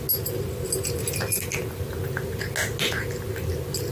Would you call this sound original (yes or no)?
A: yes